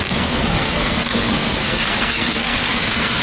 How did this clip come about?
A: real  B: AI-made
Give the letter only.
B